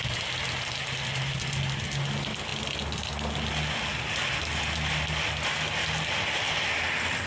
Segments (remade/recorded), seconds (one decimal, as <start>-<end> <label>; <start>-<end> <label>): 0.0-7.3 recorded